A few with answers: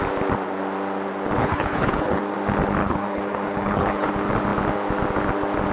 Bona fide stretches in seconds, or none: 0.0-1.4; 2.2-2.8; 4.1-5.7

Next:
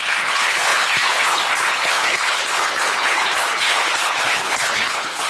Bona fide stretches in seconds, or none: none

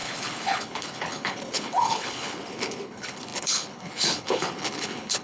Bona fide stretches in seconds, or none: none